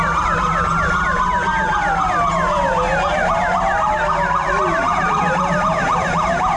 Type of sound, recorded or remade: recorded